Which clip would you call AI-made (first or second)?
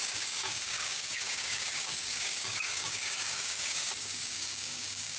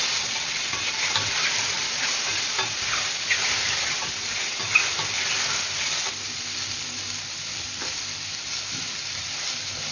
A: first